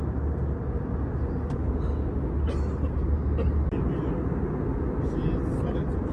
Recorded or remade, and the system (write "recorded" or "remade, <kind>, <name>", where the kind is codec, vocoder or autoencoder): recorded